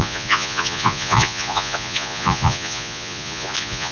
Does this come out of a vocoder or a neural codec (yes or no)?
yes